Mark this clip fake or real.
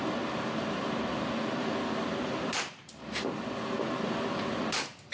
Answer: real